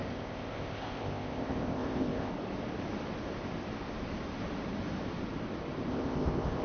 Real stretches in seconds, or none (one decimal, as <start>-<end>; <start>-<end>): 2.3-5.9